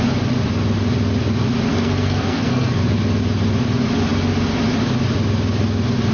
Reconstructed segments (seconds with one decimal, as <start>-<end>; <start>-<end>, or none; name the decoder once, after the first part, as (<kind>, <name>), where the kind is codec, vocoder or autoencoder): 1.7-2.8 (codec, SNAC)